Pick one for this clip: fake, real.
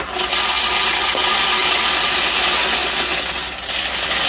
real